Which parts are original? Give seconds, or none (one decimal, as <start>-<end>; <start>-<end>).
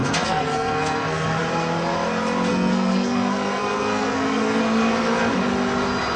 1.4-2.5; 4.6-6.2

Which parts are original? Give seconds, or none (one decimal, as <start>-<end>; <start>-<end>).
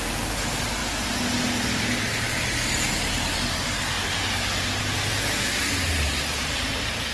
0.0-7.1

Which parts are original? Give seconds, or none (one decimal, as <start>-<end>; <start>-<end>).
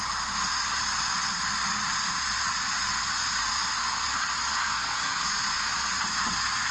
0.0-4.6; 5.4-6.7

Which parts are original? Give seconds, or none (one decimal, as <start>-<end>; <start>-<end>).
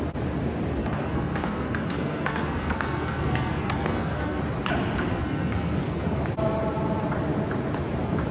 0.0-0.8; 4.4-5.1; 6.2-8.3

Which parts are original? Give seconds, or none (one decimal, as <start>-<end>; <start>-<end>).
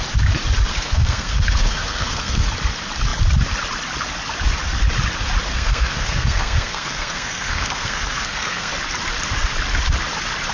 0.0-0.7; 2.5-5.5; 8.7-10.5